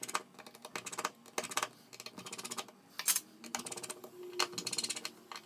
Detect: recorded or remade recorded